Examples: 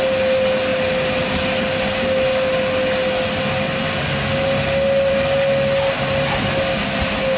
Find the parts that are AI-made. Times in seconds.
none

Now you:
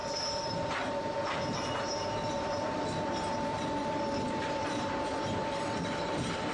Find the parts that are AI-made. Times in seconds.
3.5-6.5 (vocoder, BigVGAN v2)